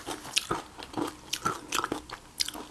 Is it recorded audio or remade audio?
recorded